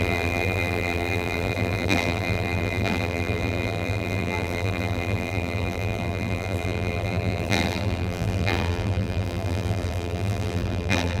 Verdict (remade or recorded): remade